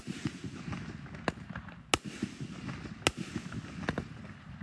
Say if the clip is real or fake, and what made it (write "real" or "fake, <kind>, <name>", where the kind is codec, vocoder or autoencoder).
real